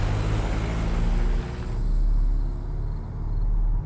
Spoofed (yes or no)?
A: no